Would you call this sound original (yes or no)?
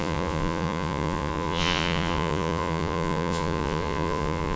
no